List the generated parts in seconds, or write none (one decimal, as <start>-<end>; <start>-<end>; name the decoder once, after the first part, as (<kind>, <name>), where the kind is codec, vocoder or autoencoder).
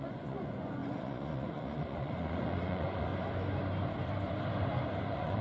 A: 0.0-3.1 (vocoder, Vocos); 5.0-5.4